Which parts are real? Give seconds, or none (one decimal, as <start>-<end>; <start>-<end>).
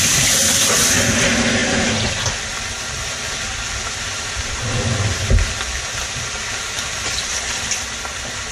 0.0-1.6; 2.5-3.5; 7.8-8.5